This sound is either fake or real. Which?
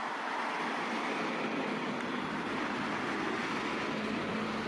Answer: real